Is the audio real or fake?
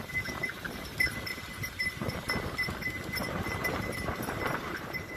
fake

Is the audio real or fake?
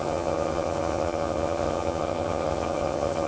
fake